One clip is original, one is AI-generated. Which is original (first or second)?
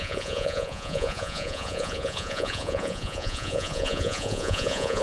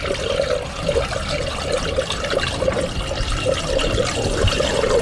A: second